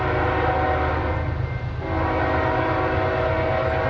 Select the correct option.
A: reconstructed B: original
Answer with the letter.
B